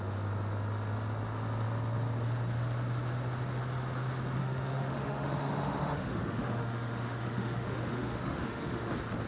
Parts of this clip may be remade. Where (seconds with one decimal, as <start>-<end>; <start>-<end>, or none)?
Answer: 4.4-8.9